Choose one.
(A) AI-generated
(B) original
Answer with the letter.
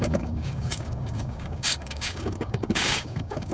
A